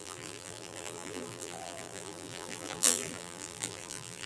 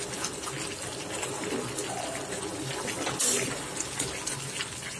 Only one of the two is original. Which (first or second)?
second